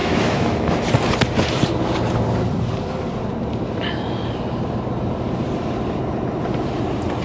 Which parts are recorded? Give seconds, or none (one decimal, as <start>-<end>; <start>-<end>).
0.7-7.2